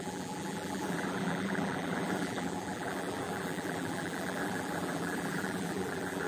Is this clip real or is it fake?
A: fake